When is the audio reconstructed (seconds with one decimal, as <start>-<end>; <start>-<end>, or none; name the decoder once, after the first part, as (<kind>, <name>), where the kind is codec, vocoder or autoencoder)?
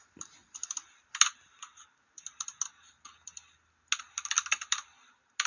none